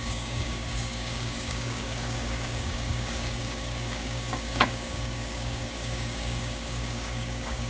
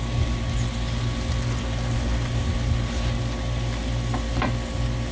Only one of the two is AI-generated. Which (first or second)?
first